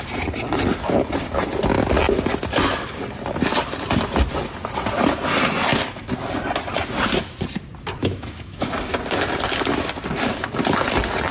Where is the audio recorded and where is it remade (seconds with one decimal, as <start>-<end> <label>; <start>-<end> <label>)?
0.0-8.0 recorded; 8.0-8.7 remade; 8.7-11.3 recorded